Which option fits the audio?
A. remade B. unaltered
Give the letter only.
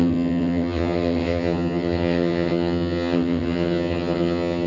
A